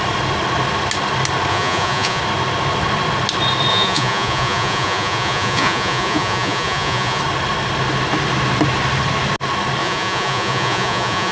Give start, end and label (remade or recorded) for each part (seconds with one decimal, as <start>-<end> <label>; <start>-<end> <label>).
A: 0.0-1.5 recorded; 1.5-2.2 remade; 2.2-3.7 recorded; 3.7-7.2 remade; 7.2-9.8 recorded; 9.8-11.3 remade